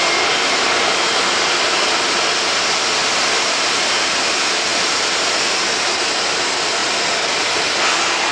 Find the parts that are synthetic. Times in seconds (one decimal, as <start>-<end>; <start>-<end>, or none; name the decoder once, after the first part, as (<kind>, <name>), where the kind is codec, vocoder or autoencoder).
3.0-4.3 (vocoder, BigVGAN v2); 4.7-5.5